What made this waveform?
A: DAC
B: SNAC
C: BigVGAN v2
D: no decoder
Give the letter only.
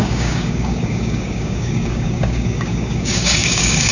A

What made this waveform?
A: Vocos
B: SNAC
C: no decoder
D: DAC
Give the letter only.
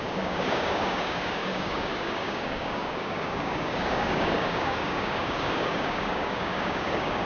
D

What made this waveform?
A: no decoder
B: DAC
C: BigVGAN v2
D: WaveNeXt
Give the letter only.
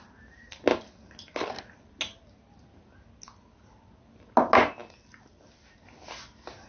A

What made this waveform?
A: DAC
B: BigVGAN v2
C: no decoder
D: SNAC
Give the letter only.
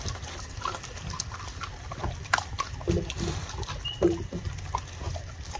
C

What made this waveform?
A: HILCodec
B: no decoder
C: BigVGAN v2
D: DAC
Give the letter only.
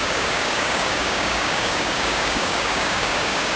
D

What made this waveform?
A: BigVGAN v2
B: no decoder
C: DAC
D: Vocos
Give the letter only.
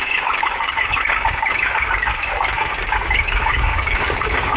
C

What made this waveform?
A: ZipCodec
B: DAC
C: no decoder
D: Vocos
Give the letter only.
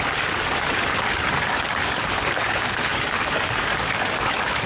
B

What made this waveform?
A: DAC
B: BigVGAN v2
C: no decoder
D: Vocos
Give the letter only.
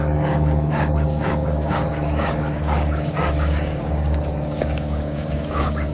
A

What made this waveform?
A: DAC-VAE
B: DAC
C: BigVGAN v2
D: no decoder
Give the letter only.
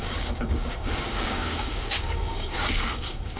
B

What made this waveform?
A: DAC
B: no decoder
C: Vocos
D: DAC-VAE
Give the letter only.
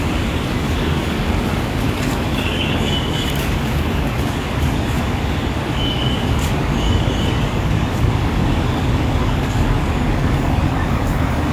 A